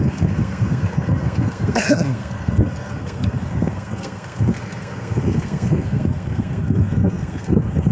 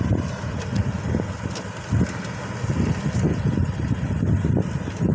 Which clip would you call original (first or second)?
second